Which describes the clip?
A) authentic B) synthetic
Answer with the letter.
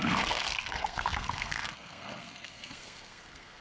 B